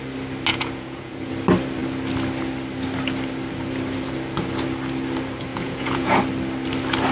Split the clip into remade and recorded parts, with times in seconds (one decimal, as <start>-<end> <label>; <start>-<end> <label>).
0.0-0.5 recorded; 0.5-1.3 remade; 1.3-5.5 recorded; 5.5-6.2 remade; 6.2-7.1 recorded